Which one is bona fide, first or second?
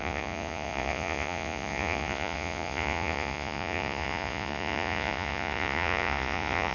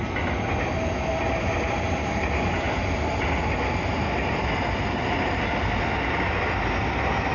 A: second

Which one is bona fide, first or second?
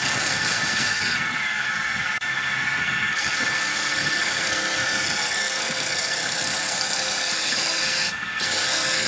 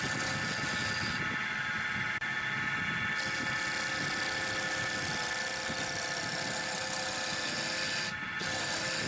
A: second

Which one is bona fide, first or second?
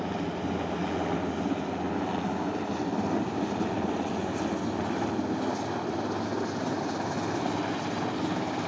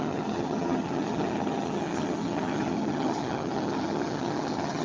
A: first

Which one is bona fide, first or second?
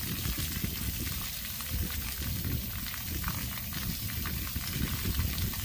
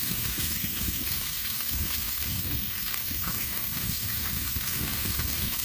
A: first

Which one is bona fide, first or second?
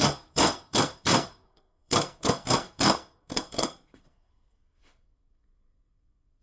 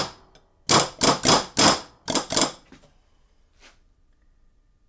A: second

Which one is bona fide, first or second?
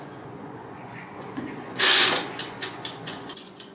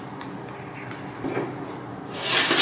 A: second